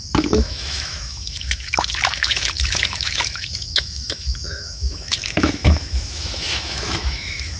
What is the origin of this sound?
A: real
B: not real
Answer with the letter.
B